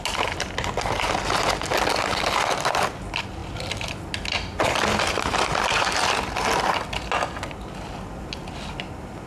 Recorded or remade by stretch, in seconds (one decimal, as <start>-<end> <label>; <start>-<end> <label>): 0.0-9.3 recorded